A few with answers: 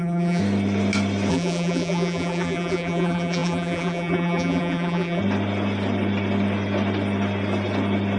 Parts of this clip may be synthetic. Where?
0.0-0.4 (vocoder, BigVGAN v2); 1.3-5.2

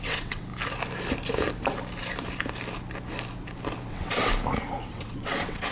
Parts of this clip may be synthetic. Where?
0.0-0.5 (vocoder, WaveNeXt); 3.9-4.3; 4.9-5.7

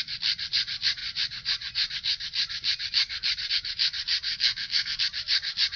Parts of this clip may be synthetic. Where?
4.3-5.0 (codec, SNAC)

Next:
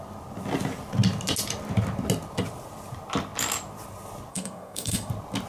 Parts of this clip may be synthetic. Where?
4.3-5.1 (codec, SNAC)